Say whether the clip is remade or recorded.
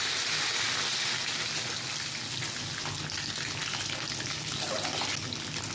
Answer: recorded